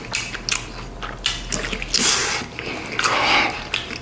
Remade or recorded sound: recorded